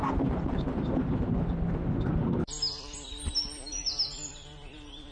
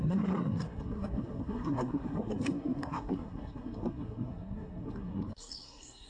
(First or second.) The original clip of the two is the first